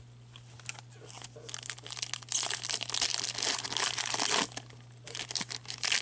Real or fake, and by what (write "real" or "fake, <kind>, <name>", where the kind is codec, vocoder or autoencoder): real